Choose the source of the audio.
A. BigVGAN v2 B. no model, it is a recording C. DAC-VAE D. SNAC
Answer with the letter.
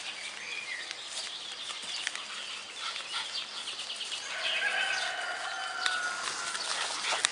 B